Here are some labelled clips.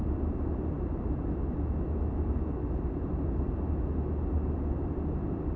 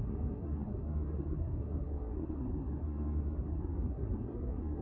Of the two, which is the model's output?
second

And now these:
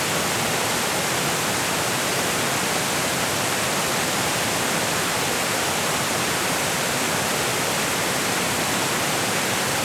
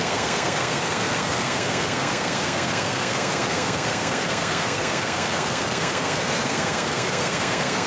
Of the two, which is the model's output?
second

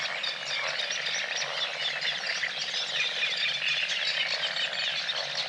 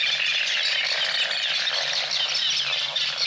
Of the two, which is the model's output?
second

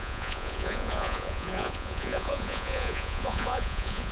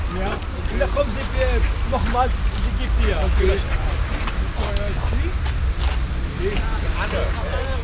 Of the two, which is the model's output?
first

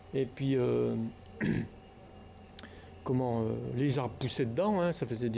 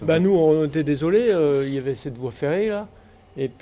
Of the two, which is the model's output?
second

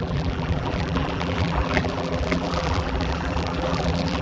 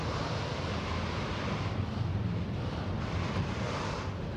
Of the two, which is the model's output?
first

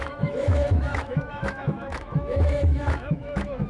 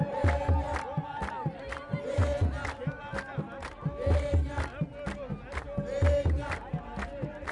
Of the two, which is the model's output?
first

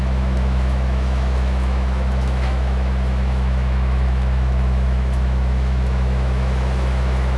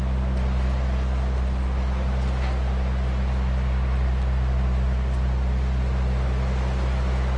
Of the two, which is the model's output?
first